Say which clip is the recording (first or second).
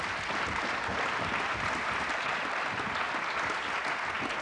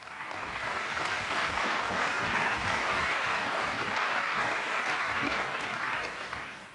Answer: first